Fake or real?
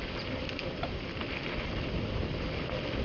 fake